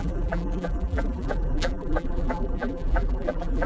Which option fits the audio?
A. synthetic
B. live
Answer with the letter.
A